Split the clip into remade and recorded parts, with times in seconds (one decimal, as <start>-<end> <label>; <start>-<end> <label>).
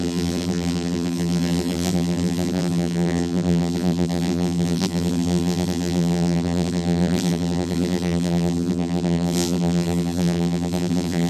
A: 0.0-11.3 remade